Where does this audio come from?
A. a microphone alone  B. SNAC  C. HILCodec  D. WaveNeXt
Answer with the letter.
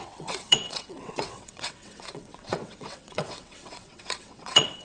D